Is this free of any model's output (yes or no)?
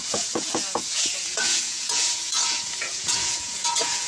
no